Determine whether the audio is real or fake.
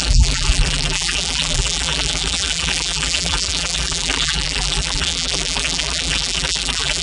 fake